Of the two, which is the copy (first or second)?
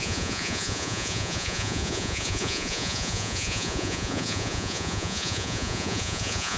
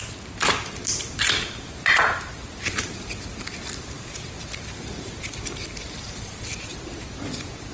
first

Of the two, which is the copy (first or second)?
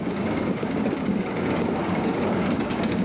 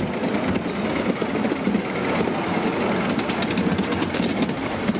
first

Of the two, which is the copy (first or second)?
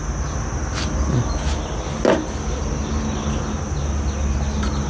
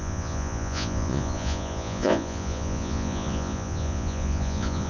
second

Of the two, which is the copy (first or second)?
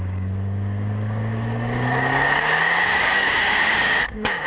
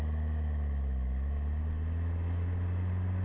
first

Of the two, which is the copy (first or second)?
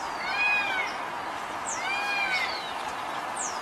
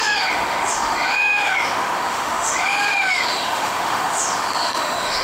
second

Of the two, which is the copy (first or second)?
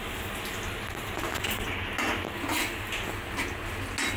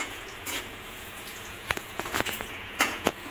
second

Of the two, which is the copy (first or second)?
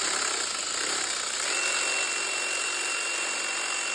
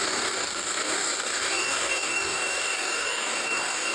second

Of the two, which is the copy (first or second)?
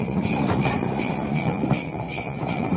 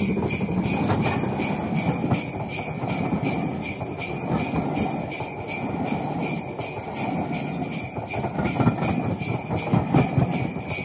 first